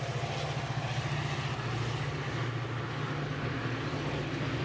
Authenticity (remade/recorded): recorded